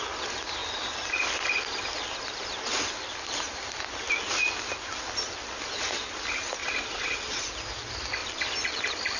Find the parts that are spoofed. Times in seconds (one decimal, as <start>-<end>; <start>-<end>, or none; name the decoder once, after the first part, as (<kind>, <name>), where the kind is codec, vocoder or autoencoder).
6.6-7.5 (vocoder, Vocos)